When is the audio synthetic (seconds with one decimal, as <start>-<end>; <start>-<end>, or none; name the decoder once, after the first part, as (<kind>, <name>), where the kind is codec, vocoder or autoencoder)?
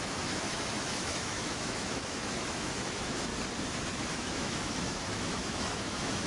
0.0-3.3 (autoencoder, DAC-VAE); 3.9-6.3